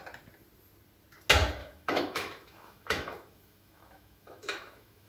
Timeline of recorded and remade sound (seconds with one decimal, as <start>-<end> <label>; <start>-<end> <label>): 0.0-1.6 recorded; 1.6-5.1 remade